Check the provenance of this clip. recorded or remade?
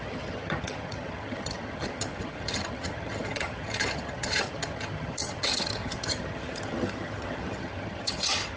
remade